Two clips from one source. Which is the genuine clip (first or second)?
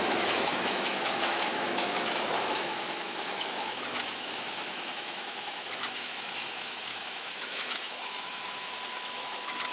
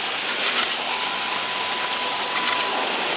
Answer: second